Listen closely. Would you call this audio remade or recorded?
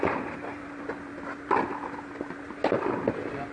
recorded